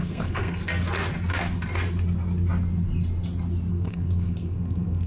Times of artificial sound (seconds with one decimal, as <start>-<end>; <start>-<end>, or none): 0.0-0.6; 3.7-5.1